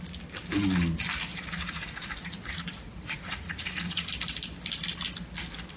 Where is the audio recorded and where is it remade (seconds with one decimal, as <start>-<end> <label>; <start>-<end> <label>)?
0.0-1.3 recorded; 1.3-4.1 remade; 4.1-5.8 recorded